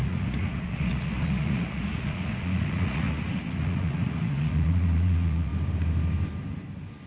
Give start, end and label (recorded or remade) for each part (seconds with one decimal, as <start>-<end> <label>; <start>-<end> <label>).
0.0-5.5 remade; 5.5-7.1 recorded